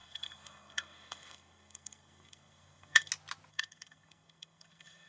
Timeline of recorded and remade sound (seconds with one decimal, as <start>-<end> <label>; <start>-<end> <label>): 0.0-3.1 remade; 3.1-3.5 recorded; 3.5-5.1 remade